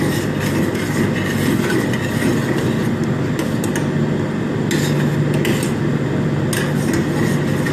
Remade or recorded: recorded